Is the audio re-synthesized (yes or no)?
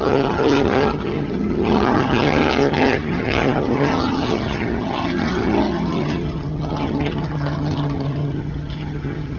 yes